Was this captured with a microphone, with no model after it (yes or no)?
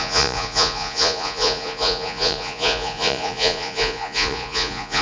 no